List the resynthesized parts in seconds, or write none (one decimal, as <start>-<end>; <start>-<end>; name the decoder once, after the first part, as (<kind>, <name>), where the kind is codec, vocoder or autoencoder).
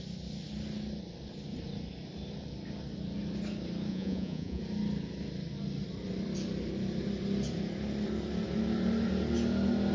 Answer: 3.9-4.6 (vocoder, Vocos)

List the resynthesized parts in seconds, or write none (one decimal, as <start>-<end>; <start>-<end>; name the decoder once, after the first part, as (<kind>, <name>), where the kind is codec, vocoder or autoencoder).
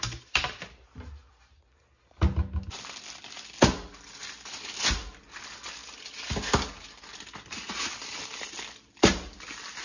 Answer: none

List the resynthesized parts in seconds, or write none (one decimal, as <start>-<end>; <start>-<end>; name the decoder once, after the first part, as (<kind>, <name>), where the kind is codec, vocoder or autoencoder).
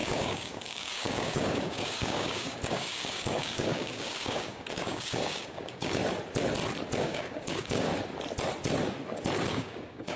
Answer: 0.0-6.0 (codec, DAC); 7.0-7.9; 9.5-10.2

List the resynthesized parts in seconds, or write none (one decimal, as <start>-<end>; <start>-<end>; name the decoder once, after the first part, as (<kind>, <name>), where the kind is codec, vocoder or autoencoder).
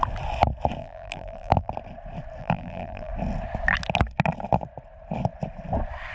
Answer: 0.8-1.7 (vocoder, BigVGAN v2); 2.4-3.1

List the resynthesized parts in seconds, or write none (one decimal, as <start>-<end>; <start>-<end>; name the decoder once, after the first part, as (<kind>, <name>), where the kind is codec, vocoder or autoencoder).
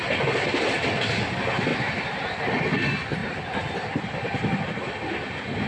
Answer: none